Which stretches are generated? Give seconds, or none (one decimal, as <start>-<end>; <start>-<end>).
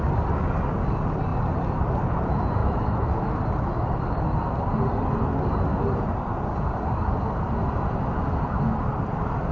2.6-3.3